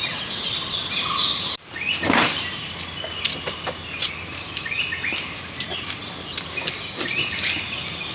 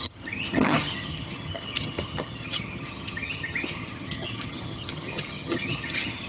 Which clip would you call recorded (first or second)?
first